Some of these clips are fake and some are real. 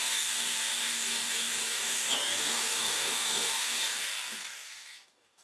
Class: fake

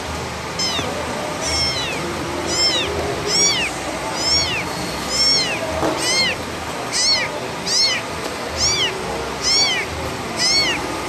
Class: real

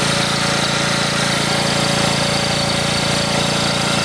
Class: real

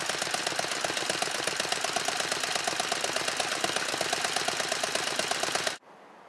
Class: real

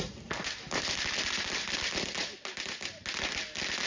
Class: real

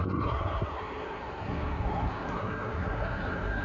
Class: fake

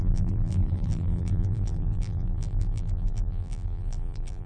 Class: fake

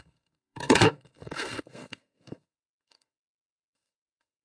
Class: fake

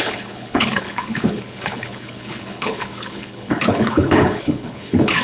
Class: fake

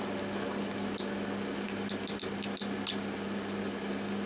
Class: real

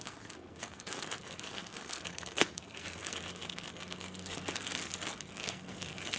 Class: fake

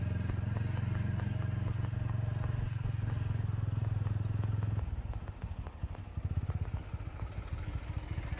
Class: real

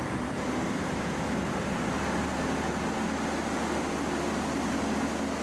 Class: real